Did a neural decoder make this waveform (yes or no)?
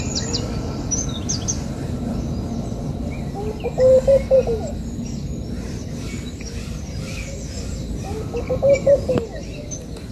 no